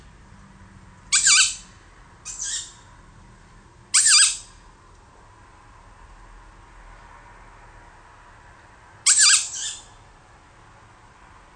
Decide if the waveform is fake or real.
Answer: real